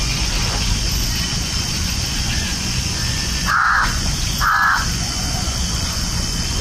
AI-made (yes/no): yes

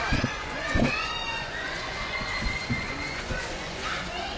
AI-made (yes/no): yes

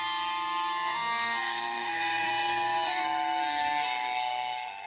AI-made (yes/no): yes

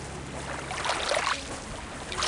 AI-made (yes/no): no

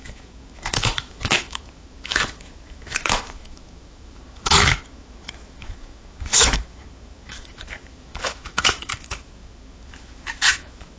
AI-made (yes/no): yes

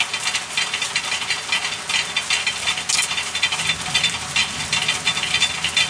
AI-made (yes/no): no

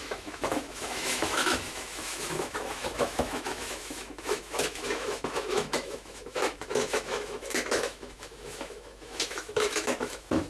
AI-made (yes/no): yes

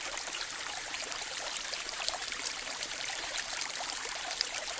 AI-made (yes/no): yes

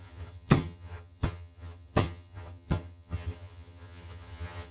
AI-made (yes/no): yes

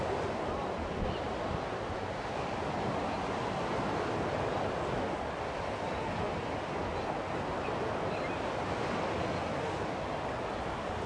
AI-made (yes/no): no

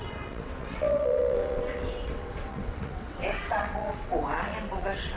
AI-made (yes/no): yes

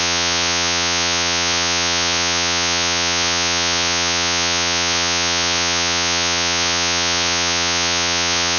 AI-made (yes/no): yes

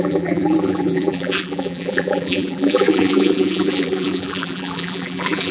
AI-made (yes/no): yes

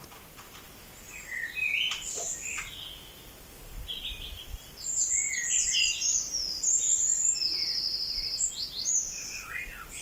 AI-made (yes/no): no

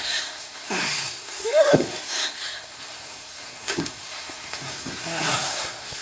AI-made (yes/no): yes